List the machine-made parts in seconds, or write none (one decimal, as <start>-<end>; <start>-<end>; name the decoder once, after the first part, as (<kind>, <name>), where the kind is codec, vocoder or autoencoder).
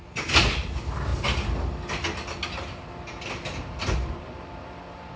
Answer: none